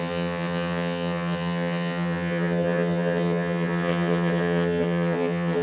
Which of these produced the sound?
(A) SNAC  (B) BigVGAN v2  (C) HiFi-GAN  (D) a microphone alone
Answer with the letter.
C